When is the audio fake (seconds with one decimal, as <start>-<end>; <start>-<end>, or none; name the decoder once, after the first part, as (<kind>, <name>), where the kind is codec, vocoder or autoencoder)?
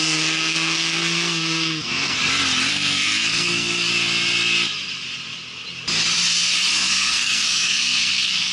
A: 0.0-2.2 (codec, SNAC); 2.7-3.9; 6.7-8.5